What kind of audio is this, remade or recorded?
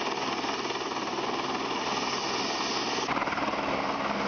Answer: recorded